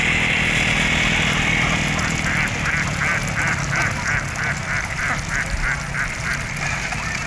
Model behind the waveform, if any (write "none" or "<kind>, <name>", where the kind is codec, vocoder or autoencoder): none